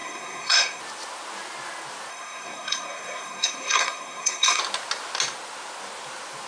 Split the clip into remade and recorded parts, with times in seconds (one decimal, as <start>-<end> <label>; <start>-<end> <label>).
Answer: 0.0-0.8 remade; 0.8-2.1 recorded; 2.1-4.6 remade; 4.6-6.5 recorded